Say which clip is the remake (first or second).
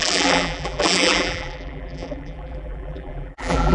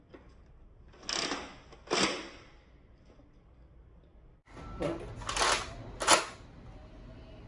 first